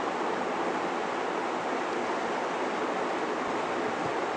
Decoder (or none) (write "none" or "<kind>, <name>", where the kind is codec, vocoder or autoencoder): none